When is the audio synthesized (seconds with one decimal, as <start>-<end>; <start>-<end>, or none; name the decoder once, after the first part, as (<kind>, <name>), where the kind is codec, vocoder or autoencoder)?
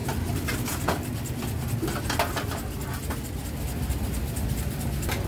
none